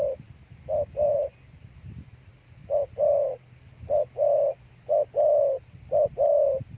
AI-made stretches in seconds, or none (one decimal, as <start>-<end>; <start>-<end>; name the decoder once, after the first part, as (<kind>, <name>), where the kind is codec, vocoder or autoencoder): none